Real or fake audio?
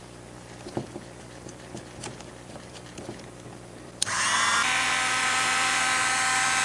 fake